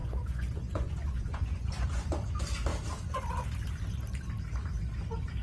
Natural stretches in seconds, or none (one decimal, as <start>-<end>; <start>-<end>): 2.3-5.4